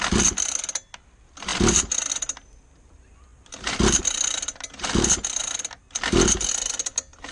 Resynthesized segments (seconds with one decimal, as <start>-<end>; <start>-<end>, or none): none